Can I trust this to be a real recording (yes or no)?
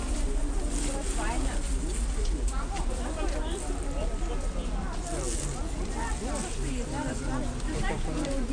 yes